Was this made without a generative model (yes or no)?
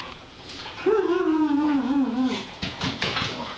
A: no